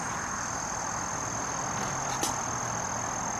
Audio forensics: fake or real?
real